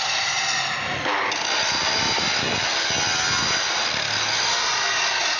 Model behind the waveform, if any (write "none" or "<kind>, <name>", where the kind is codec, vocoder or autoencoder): none